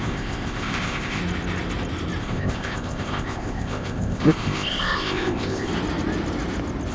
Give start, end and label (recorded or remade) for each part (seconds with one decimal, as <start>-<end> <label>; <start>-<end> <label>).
0.0-1.2 remade; 1.2-2.2 recorded; 2.2-5.7 remade; 5.7-6.9 recorded